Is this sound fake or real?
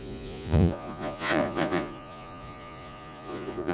fake